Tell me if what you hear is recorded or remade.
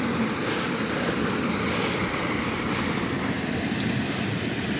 recorded